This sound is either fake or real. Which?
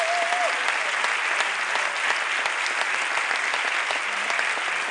real